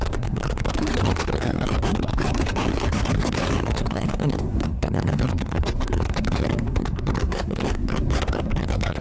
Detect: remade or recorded remade